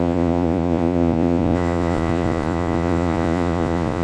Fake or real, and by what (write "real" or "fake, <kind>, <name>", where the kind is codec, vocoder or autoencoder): fake, vocoder, Vocos